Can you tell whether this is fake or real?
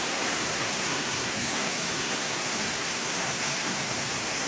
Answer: fake